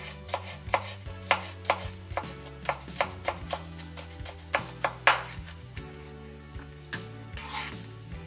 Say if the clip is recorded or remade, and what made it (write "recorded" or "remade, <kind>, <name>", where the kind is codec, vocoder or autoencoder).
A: recorded